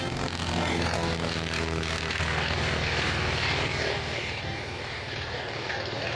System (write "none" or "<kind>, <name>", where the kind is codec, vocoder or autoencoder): codec, DAC